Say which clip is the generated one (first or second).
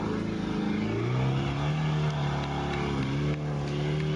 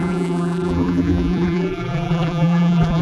second